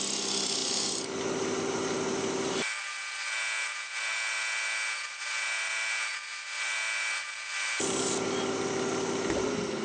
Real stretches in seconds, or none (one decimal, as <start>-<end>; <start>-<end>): 0.0-9.8